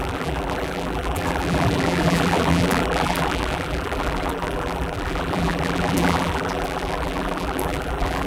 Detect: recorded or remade remade